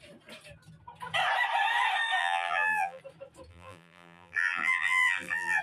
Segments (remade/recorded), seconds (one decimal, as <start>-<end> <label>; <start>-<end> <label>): 0.0-2.2 recorded; 2.2-3.0 remade; 3.0-3.5 recorded; 3.5-5.6 remade